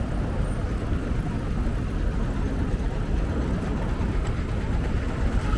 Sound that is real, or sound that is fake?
real